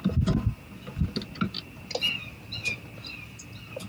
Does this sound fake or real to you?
real